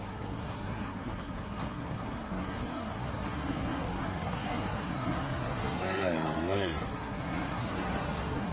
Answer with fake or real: fake